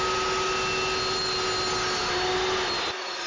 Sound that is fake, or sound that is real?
real